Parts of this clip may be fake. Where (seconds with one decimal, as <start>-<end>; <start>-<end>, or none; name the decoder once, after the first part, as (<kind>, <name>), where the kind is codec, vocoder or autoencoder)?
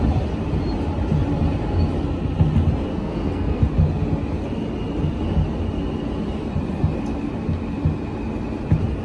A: 2.9-3.6 (codec, SNAC)